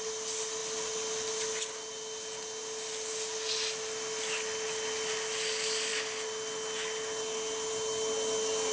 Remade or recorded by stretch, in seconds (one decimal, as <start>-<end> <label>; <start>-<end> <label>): 0.0-8.7 recorded